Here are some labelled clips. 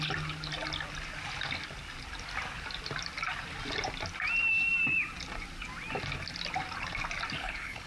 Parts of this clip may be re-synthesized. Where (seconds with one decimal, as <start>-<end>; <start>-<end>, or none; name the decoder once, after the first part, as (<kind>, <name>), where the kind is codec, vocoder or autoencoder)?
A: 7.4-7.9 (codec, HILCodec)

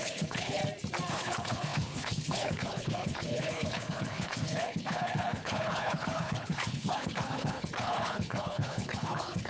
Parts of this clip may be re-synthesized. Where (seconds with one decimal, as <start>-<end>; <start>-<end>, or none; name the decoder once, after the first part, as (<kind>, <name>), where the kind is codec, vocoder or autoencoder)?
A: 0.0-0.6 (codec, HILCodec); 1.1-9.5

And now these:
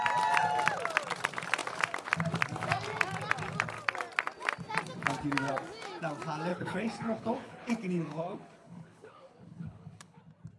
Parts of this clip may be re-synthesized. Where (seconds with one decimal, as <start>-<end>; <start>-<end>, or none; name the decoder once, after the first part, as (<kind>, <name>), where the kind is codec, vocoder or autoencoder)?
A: 6.5-10.2 (codec, HILCodec)

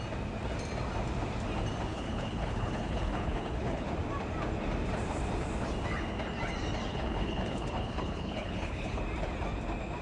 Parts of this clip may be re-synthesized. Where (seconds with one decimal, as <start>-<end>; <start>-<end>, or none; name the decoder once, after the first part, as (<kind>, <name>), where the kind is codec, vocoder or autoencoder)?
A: 1.9-3.9 (codec, HILCodec); 6.9-9.0